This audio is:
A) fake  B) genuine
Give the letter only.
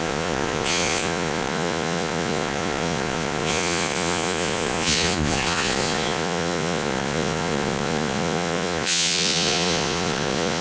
A